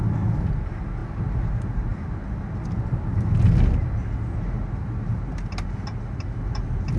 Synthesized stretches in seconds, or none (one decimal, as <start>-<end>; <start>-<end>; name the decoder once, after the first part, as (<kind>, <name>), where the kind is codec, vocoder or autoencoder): none